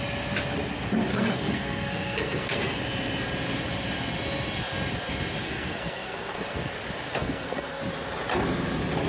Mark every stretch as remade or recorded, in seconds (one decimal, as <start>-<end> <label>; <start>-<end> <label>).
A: 0.0-1.1 recorded; 1.1-2.8 remade; 2.8-5.4 recorded; 5.4-6.7 remade; 6.7-7.2 recorded; 7.2-7.8 remade; 7.8-9.1 recorded